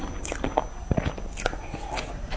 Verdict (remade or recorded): recorded